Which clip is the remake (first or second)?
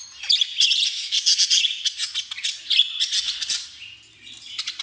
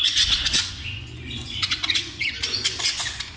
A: second